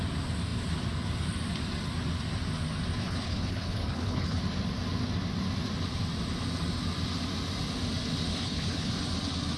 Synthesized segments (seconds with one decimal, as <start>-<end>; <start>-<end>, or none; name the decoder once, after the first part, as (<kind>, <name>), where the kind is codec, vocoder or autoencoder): 3.0-4.4 (codec, HILCodec); 8.3-8.9